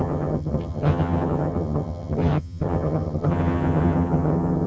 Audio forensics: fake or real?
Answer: fake